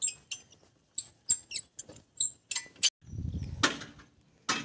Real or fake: real